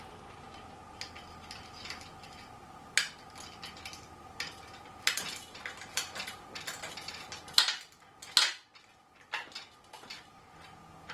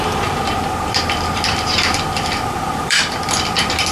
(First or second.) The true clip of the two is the first